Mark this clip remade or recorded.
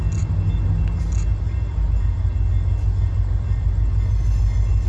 recorded